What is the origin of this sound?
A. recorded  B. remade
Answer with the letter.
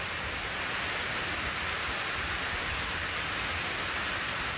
B